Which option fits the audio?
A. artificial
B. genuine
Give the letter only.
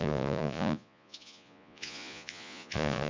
A